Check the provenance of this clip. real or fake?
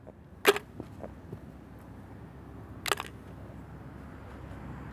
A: real